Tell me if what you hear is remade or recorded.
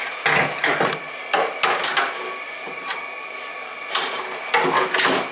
recorded